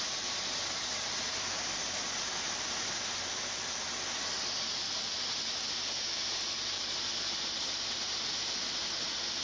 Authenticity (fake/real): real